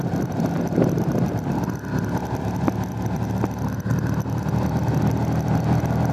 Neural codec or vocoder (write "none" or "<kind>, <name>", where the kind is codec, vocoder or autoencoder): none